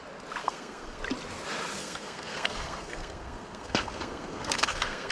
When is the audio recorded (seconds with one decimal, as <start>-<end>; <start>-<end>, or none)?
0.0-0.4; 1.0-1.8